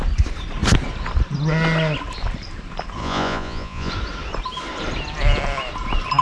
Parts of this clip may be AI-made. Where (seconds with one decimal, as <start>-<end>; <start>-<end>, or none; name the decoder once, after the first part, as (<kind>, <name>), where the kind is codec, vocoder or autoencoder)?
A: 3.0-3.9 (vocoder, Vocos)